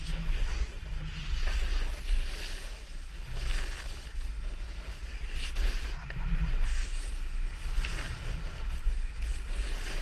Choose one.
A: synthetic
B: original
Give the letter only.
B